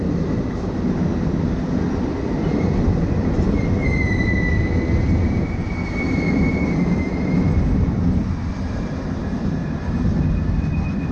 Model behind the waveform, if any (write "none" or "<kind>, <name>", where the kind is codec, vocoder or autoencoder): none